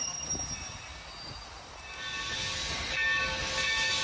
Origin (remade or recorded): recorded